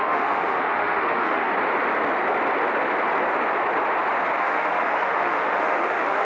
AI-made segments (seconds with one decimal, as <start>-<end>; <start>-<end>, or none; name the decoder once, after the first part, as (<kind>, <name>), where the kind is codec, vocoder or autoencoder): 0.0-1.5 (autoencoder, DAC-VAE); 4.4-6.2